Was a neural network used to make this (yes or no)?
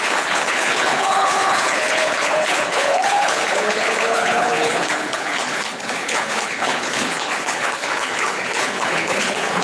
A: yes